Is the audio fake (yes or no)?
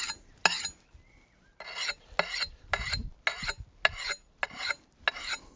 no